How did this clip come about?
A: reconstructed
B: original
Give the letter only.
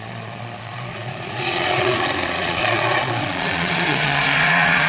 A